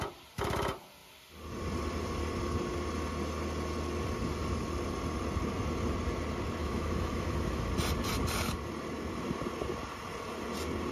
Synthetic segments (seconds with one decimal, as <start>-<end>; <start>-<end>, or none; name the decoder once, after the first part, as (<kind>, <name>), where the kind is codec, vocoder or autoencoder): 6.6-7.7 (autoencoder, DAC-VAE)